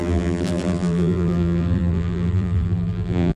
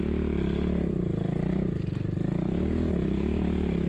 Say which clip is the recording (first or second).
second